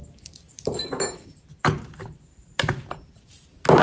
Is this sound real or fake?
real